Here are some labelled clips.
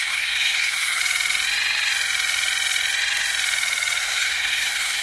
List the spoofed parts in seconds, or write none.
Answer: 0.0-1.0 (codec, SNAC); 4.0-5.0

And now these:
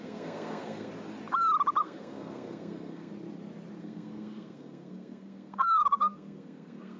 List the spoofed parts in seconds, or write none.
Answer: 0.0-0.9 (codec, SNAC); 1.8-3.1; 3.8-7.0

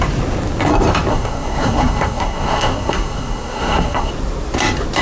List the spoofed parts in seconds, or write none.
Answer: 1.1-4.1 (codec, SNAC)